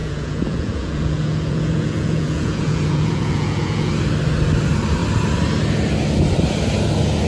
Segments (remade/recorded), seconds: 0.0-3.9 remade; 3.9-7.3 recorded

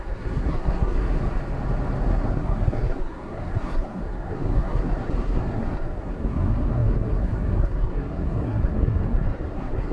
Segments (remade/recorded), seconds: 0.0-1.2 remade; 1.2-2.1 recorded; 2.1-9.9 remade